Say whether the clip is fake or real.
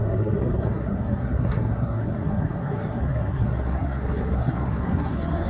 fake